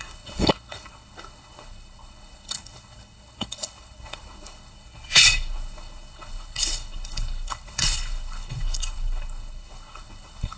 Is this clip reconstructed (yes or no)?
yes